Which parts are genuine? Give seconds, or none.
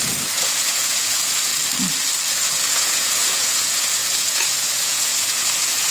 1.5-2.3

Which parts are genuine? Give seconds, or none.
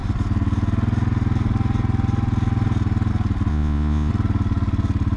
0.0-3.5; 4.1-5.2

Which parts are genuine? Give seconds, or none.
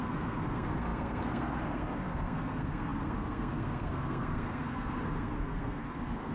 none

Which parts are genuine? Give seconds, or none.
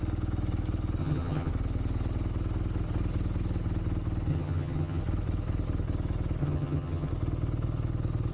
0.0-1.0; 1.5-4.3; 5.0-6.4; 7.1-8.3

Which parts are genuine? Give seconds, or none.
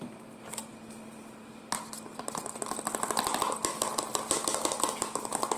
0.0-5.6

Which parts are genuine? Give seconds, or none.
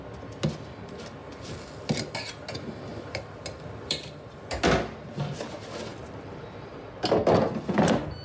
0.0-1.2; 1.7-2.9; 4.6-8.2